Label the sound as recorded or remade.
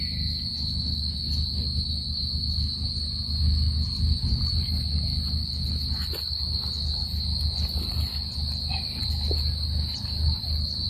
recorded